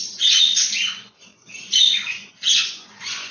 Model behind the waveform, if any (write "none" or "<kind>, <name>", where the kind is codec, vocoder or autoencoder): vocoder, Vocos